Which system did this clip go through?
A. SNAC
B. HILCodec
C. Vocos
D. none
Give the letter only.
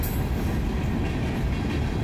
D